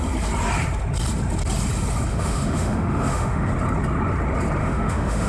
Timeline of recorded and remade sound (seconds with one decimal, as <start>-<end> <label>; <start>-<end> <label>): 0.0-2.1 recorded; 2.1-3.5 remade; 3.5-4.6 recorded; 4.6-5.3 remade

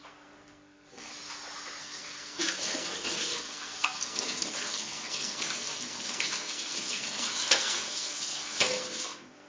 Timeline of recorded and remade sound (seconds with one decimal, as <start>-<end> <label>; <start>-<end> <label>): 0.0-1.1 remade; 1.1-1.8 recorded; 1.8-9.5 remade

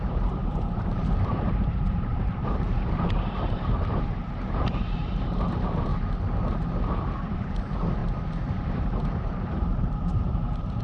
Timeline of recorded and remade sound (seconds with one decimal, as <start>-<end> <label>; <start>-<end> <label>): 0.0-5.9 remade; 5.9-6.8 recorded; 6.8-8.0 remade; 8.0-8.9 recorded; 8.9-10.8 remade

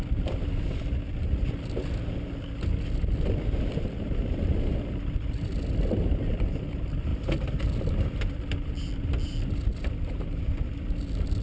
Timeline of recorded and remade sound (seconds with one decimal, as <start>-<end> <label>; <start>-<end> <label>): 0.0-11.4 recorded

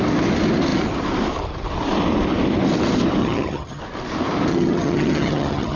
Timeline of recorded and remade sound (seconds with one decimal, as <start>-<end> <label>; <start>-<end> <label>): 0.0-3.2 recorded; 3.2-3.8 remade; 3.8-4.5 recorded; 4.5-5.8 remade

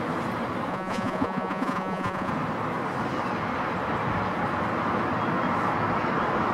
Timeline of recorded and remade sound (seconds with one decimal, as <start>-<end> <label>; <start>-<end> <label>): 0.0-0.7 recorded; 0.7-2.3 remade; 2.3-6.5 recorded